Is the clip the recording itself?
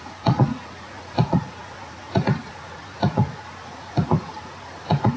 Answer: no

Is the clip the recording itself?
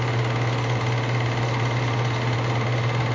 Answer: yes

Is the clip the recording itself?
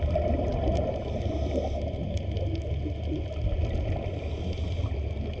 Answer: yes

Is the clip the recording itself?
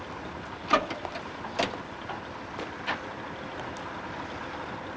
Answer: yes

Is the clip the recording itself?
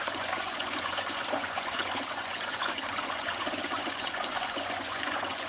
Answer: no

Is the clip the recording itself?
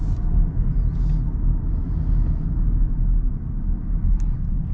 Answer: yes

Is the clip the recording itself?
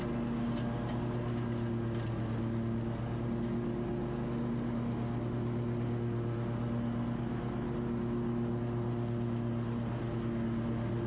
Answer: yes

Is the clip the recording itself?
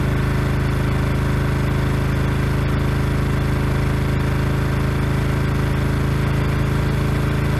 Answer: yes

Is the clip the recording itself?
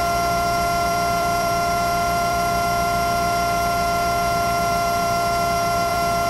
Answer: no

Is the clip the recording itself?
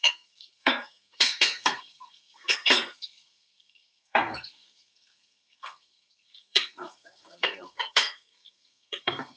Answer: no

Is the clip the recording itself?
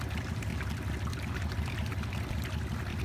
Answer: yes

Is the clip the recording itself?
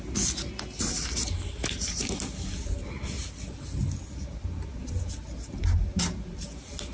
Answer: yes